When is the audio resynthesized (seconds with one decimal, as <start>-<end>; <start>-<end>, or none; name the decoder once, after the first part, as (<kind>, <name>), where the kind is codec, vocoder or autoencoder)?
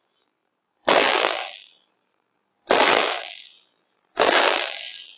0.0-5.2 (vocoder, BigVGAN v2)